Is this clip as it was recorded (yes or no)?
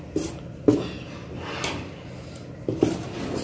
yes